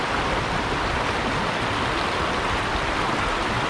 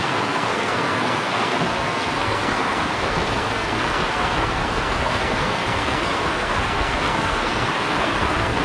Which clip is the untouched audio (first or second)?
first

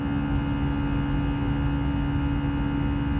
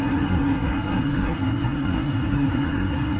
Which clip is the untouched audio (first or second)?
first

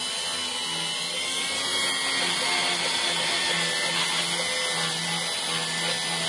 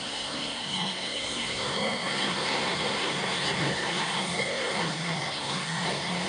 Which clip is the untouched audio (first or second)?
first